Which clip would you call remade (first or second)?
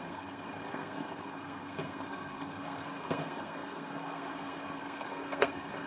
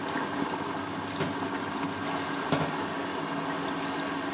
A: first